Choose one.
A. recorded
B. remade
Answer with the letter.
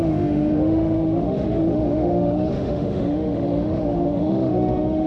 B